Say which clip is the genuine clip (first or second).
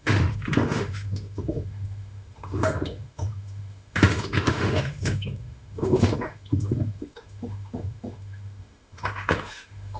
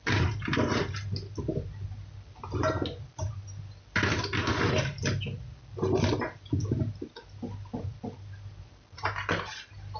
second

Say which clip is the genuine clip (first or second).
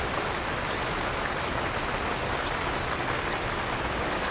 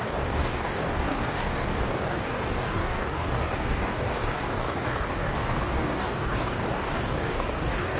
first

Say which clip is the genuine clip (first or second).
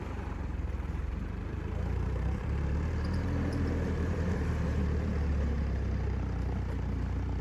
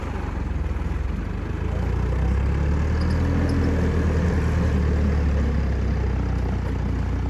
second